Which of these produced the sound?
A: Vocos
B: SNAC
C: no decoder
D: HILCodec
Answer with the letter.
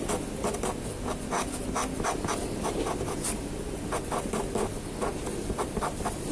C